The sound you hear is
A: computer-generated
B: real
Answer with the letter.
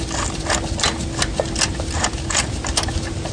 B